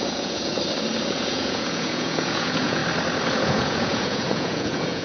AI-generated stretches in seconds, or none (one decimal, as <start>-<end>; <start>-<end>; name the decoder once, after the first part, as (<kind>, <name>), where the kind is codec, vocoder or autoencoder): 0.0-0.5 (vocoder, Vocos); 1.1-2.8; 3.3-5.0